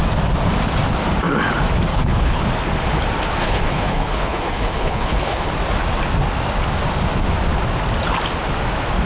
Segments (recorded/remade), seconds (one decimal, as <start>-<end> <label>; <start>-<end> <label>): 0.0-1.9 recorded; 1.9-2.4 remade; 2.4-3.4 recorded; 3.4-5.5 remade; 5.5-9.1 recorded